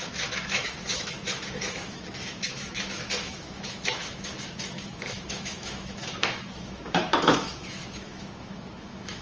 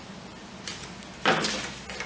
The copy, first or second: first